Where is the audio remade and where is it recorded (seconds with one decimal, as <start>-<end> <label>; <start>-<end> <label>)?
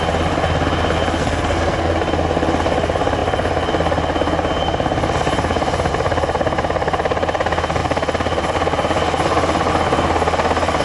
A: 0.0-1.2 recorded; 1.2-1.9 remade; 1.9-10.8 recorded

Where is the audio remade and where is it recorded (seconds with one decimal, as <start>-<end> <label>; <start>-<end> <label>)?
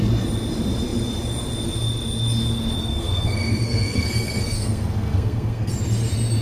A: 0.0-2.8 recorded; 2.8-5.7 remade; 5.7-6.4 recorded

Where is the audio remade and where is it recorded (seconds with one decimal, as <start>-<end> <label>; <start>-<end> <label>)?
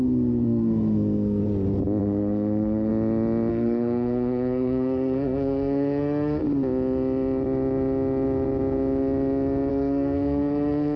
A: 0.0-1.4 remade; 1.4-2.0 recorded; 2.0-2.9 remade; 2.9-3.5 recorded; 3.5-6.4 remade; 6.4-9.7 recorded; 9.7-11.0 remade